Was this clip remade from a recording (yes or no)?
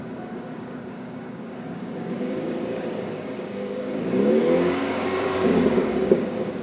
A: yes